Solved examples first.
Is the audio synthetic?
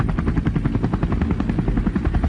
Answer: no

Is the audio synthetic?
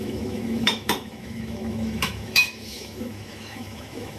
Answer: yes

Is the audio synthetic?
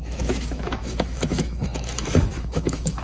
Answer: yes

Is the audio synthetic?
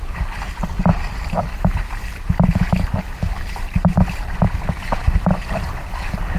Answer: no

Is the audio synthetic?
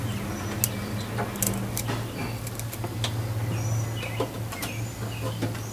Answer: no